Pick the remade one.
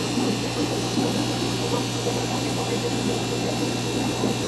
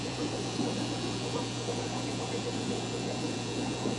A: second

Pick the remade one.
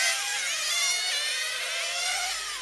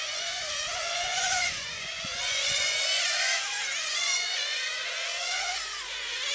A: second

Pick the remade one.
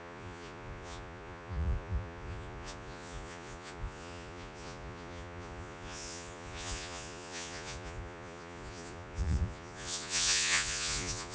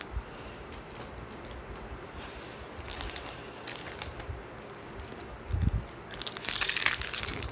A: first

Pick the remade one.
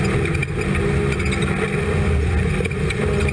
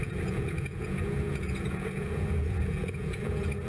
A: second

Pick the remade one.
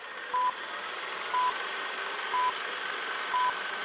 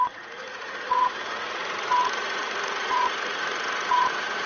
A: second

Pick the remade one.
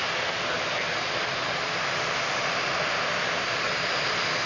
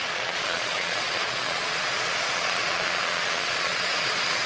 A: second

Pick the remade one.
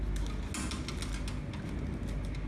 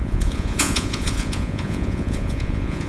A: second